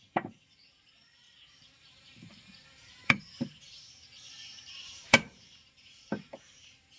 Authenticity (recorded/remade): remade